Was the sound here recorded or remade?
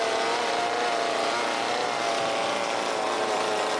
recorded